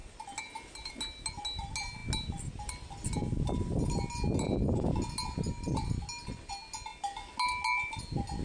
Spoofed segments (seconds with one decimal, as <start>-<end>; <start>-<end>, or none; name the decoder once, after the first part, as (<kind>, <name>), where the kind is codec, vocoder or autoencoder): none

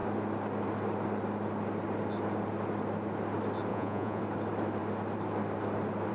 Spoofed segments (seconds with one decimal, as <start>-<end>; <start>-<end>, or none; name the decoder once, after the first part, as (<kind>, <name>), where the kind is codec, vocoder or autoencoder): 3.7-4.2 (vocoder, Vocos)

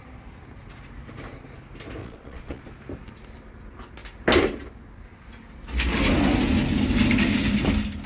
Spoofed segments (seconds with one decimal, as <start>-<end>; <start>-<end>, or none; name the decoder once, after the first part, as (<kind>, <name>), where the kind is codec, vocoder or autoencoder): 2.0-2.6 (vocoder, Vocos)